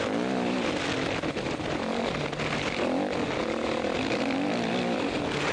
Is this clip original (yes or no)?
yes